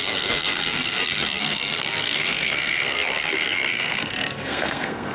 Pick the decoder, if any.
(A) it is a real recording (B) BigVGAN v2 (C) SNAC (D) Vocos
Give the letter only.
C